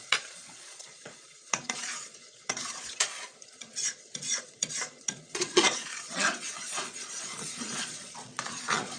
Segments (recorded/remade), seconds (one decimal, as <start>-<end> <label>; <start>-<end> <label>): 0.0-9.0 remade